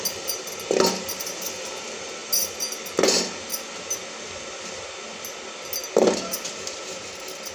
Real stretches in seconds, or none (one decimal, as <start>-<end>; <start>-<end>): 0.0-7.5